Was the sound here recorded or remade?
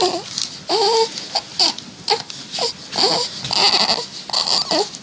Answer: recorded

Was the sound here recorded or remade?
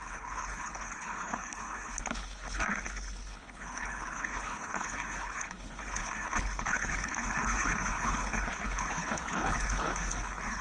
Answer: remade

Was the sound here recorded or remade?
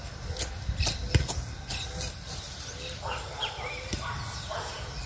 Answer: recorded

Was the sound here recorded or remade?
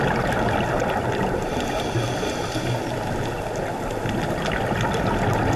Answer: recorded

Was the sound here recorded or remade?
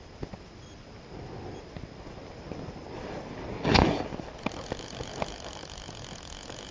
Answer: recorded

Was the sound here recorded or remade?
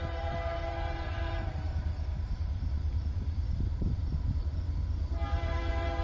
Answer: remade